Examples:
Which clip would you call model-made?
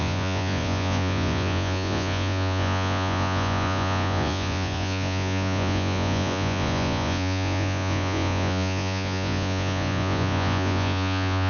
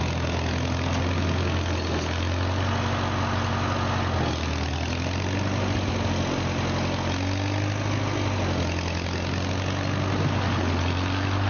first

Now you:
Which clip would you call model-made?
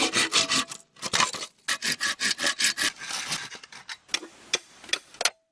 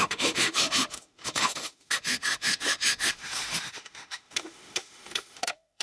second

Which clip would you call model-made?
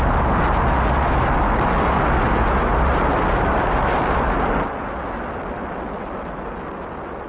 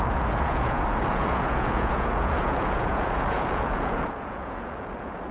second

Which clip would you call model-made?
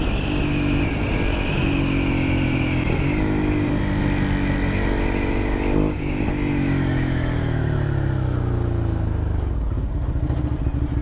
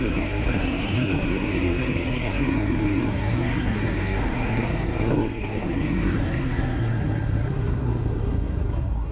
second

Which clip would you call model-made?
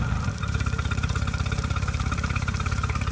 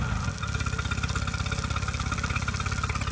first